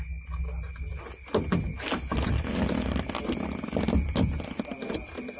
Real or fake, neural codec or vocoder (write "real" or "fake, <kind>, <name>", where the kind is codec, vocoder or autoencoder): real